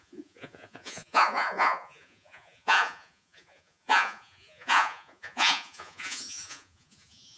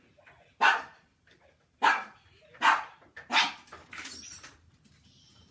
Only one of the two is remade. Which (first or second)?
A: first